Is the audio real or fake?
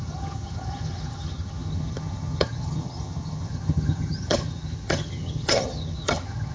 fake